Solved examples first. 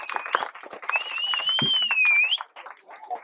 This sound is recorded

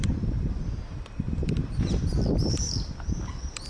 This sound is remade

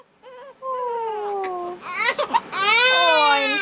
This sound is recorded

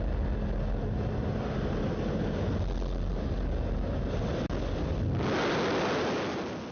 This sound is recorded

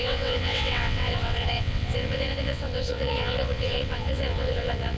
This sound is remade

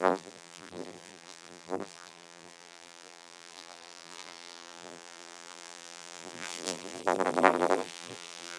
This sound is remade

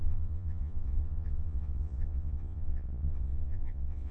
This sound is remade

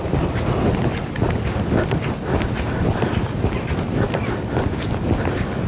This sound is recorded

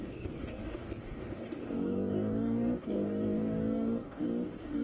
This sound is remade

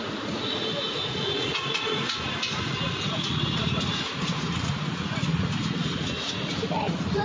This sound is remade